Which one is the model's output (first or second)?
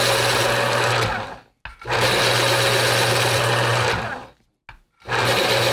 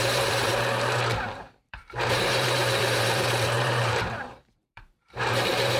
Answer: second